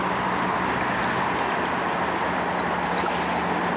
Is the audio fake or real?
real